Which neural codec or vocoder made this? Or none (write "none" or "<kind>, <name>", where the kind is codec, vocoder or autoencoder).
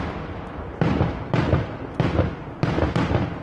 none